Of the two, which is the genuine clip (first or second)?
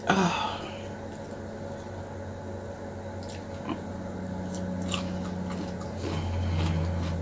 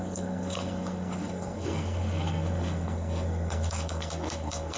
first